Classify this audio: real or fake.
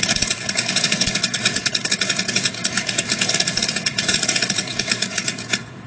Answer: fake